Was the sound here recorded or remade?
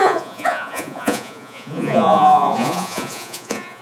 remade